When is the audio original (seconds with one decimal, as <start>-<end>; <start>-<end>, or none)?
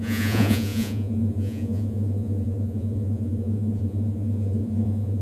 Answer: none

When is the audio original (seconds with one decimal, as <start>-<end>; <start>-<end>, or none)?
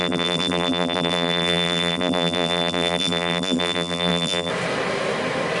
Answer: 4.5-5.6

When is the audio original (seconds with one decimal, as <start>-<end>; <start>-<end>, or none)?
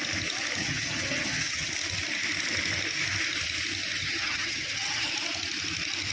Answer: 0.0-0.6; 1.7-4.0; 5.1-6.1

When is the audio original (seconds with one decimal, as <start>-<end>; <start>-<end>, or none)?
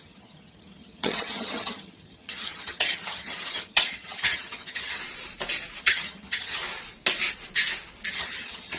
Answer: 5.0-5.8; 6.6-8.1